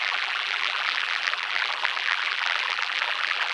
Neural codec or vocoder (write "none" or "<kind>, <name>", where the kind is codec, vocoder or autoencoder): vocoder, BigVGAN v2